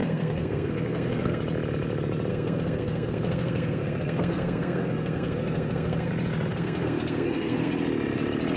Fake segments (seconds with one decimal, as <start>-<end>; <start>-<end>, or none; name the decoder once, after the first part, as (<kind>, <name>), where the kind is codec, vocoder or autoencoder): 0.0-1.4 (codec, SNAC); 2.3-6.1; 6.5-7.7

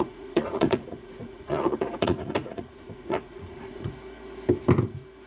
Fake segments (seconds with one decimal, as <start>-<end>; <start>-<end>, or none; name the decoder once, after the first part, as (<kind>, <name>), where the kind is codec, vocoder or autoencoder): 0.0-3.9 (vocoder, Vocos)

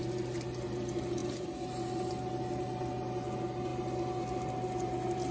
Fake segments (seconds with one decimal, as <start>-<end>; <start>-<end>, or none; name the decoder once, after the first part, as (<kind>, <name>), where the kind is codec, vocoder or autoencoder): none

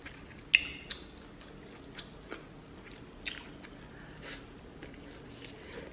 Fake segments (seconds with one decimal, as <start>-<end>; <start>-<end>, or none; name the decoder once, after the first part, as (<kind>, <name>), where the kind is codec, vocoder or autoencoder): none

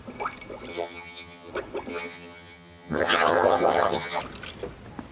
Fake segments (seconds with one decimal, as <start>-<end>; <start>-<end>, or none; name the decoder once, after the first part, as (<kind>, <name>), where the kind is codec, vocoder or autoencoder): 0.7-1.5 (vocoder, HiFi-GAN); 1.9-4.2

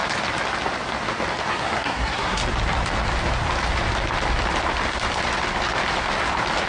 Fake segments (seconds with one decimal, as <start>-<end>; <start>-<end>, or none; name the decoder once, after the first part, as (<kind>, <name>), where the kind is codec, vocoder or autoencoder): 1.5-2.4 (codec, SNAC)

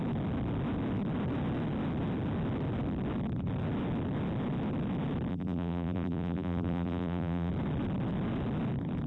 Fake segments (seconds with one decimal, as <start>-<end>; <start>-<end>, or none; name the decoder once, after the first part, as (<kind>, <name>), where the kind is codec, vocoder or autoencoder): 5.3-7.5 (vocoder, BigVGAN v2)